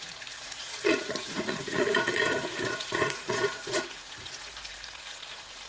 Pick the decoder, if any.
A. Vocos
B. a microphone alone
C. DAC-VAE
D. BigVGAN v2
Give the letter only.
A